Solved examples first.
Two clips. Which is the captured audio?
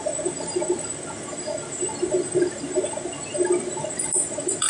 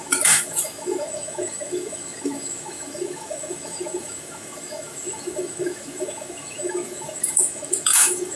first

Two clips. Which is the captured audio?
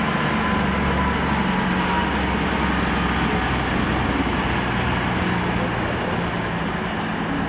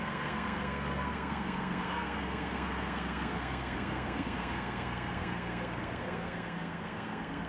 first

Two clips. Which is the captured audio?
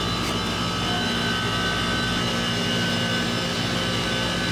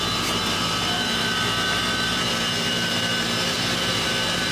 first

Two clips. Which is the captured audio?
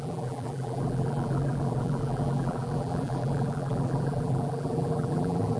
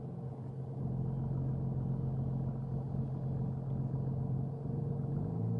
second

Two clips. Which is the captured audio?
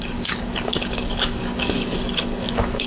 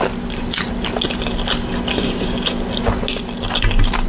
second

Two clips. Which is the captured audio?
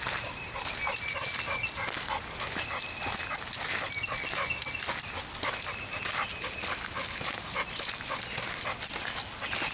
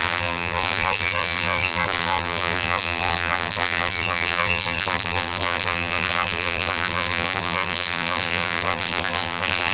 first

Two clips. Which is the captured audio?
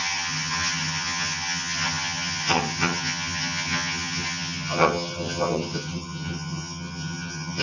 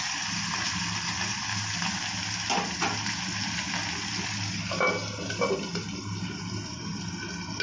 second